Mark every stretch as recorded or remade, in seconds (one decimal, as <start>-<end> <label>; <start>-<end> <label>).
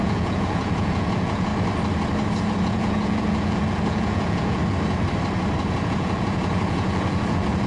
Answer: 0.0-1.5 remade; 1.5-2.4 recorded; 2.4-4.6 remade; 4.6-5.8 recorded; 5.8-7.7 remade